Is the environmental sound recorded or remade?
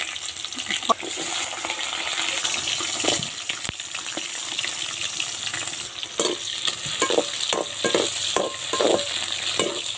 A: recorded